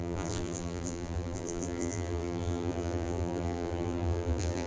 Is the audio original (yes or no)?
no